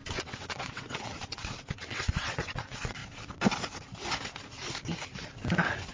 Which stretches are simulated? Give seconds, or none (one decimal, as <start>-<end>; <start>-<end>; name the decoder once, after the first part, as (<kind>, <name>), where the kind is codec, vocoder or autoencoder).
0.0-3.0 (vocoder, WaveNeXt)